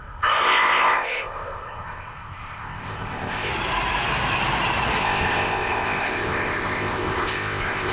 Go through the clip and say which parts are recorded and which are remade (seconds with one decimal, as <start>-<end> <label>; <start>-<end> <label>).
0.0-3.5 remade; 3.5-5.0 recorded; 5.0-7.9 remade